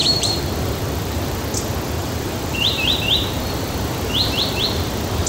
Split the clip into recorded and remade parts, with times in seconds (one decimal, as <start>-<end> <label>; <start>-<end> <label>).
0.0-1.4 remade; 1.4-2.0 recorded; 2.0-5.3 remade